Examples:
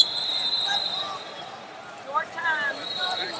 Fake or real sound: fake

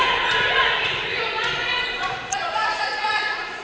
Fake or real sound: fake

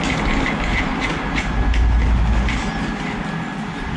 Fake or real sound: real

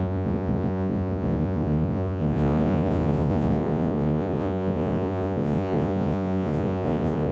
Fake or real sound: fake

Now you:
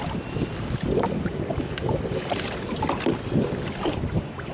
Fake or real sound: real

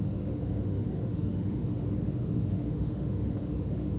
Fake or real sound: fake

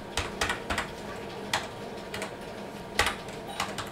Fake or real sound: real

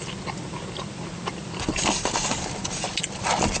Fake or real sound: real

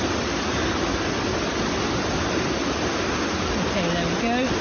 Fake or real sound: real